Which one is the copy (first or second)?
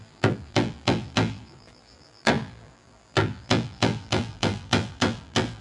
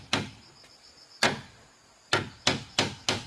first